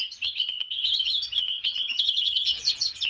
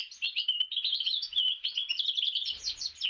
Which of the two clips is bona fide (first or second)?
second